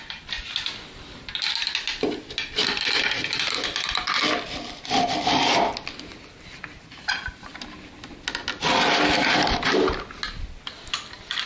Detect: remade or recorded recorded